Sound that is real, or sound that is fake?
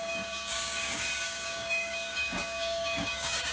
fake